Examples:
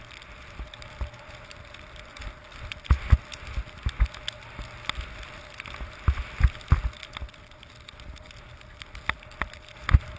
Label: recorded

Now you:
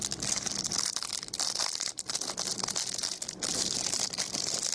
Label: recorded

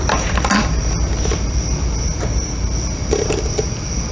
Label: recorded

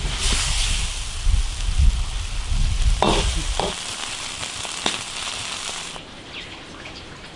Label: recorded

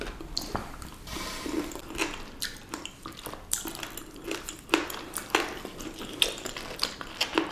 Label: recorded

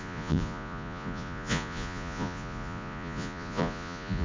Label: remade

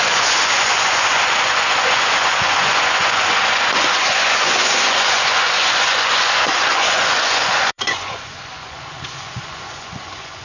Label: remade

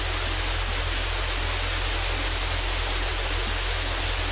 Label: recorded